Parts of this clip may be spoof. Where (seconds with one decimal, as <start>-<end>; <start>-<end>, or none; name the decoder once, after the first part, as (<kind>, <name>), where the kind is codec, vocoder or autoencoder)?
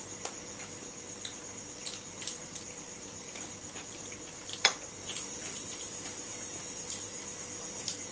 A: none